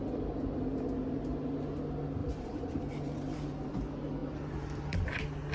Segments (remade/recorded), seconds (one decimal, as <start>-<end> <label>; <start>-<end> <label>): 0.0-2.2 recorded; 2.2-3.8 remade; 3.8-4.2 recorded; 4.2-5.1 remade; 5.1-5.5 recorded